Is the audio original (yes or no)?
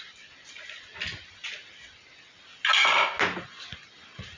yes